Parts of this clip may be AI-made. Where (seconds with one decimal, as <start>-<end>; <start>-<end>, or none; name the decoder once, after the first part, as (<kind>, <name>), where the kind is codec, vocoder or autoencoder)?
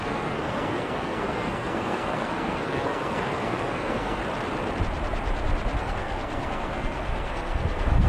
0.0-4.2 (codec, SNAC); 5.8-8.1